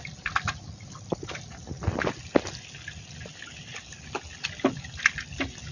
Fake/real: real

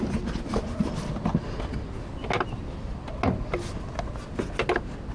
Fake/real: real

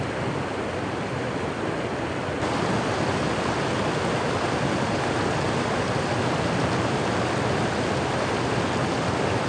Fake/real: real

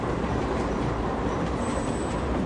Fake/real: fake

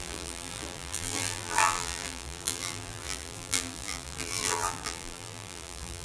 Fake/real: fake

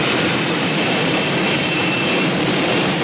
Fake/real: fake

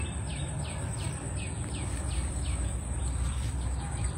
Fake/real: fake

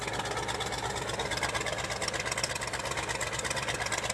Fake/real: real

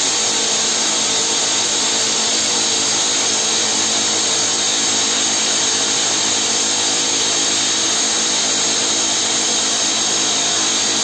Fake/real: real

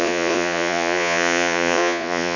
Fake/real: fake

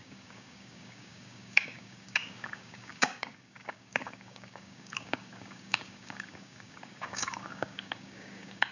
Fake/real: fake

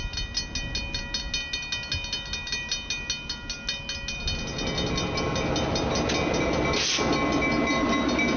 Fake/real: real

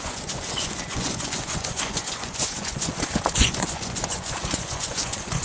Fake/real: fake